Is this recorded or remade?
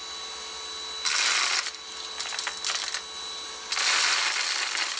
recorded